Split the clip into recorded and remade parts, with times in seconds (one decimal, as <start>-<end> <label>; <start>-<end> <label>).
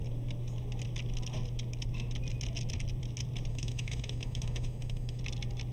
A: 0.0-3.5 recorded; 3.5-5.2 remade; 5.2-5.7 recorded